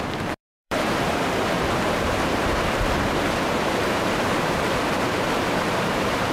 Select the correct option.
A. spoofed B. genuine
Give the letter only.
A